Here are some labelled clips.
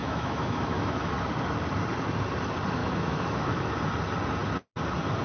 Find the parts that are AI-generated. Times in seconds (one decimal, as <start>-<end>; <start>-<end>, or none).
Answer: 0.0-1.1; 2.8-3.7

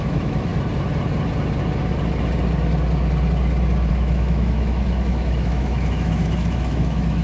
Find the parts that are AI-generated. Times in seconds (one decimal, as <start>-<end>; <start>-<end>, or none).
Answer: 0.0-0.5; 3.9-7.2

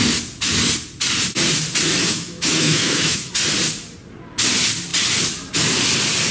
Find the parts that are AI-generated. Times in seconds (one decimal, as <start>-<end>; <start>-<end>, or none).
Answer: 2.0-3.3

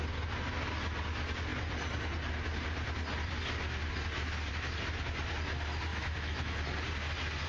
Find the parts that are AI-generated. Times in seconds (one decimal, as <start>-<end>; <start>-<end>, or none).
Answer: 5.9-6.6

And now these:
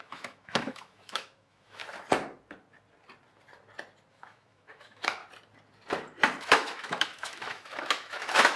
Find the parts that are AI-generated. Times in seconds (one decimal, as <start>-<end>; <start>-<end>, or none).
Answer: 0.0-1.8; 4.1-5.2; 6.4-8.6

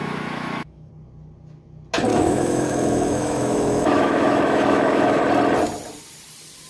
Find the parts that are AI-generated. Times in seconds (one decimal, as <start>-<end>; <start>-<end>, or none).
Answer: 0.0-0.9; 2.1-5.2